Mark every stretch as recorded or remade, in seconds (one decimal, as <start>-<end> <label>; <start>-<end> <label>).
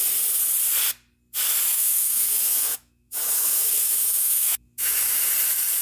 0.0-1.7 recorded; 1.7-5.2 remade; 5.2-5.8 recorded